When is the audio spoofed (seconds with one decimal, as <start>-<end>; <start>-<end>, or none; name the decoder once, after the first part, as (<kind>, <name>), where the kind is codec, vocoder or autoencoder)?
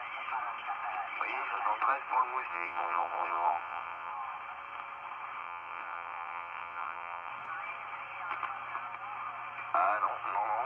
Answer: 2.5-4.1 (vocoder, WaveNeXt); 5.4-7.3